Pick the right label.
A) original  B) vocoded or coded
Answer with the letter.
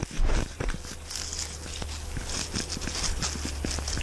A